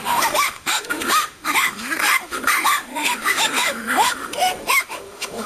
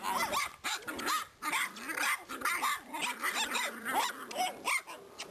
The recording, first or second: second